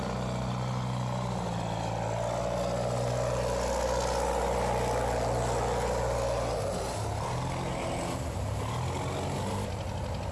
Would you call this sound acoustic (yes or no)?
yes